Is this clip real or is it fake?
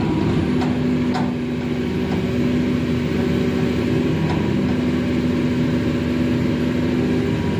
real